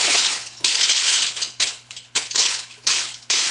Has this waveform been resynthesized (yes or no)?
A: yes